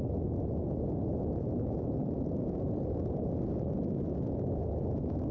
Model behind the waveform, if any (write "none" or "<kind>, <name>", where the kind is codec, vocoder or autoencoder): none